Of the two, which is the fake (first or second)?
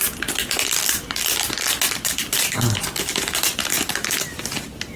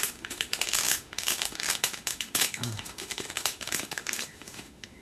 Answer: second